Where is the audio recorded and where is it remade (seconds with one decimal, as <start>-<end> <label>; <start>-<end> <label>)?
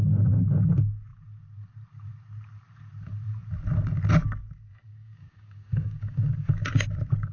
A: 0.0-4.9 recorded; 4.9-6.7 remade; 6.7-7.3 recorded